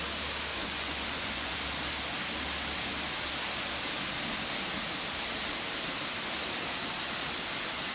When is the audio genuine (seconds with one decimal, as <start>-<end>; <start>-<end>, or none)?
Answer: 0.0-0.5; 1.6-7.9